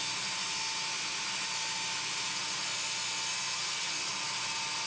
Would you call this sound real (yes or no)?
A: yes